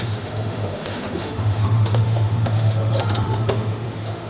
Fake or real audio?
fake